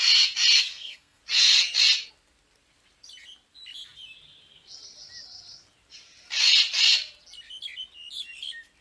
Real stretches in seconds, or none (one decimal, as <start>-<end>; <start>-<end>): 0.0-0.7; 1.2-8.8